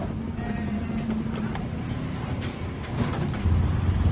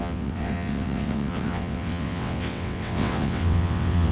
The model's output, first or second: second